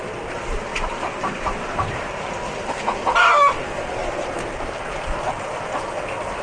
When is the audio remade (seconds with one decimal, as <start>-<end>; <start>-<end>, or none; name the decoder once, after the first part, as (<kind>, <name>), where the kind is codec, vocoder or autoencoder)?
0.7-2.2 (vocoder, BigVGAN v2); 4.0-5.9